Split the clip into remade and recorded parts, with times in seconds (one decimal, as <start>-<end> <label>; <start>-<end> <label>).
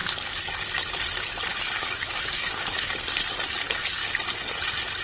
0.0-1.5 recorded; 1.5-2.9 remade; 2.9-5.0 recorded